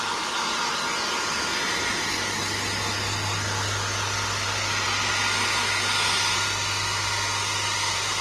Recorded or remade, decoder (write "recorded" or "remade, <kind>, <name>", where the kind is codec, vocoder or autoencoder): recorded